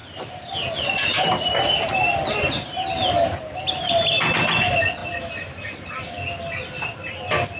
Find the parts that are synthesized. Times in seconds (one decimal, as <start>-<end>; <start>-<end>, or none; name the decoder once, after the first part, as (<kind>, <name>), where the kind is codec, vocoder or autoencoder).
none